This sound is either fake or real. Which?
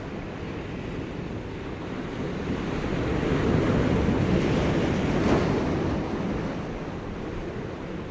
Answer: real